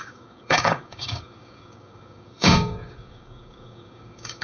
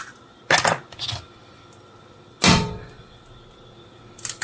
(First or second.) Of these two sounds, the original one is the second